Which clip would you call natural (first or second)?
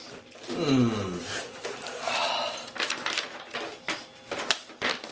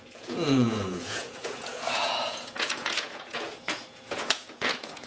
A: first